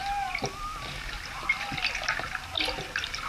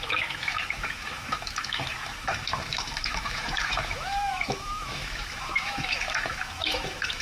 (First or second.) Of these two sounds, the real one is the first